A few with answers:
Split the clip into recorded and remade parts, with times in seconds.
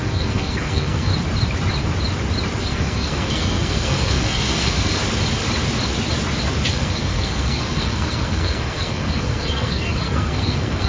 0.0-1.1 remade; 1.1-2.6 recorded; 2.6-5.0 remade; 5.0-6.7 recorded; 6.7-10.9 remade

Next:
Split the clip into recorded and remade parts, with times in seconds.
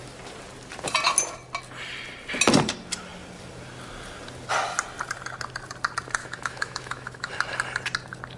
0.0-6.2 recorded; 6.2-7.3 remade; 7.3-8.4 recorded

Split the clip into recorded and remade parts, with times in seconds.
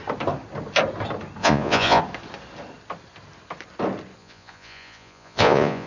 0.0-1.4 recorded; 1.4-2.0 remade; 2.0-4.2 recorded; 4.2-5.9 remade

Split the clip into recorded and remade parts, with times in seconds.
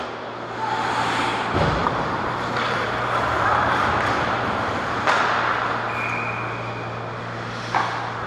0.0-1.8 recorded; 1.8-5.5 remade; 5.5-8.3 recorded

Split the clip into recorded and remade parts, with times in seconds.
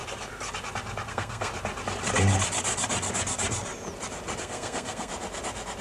0.0-1.1 recorded; 1.1-1.5 remade; 1.5-4.4 recorded; 4.4-5.1 remade; 5.1-5.8 recorded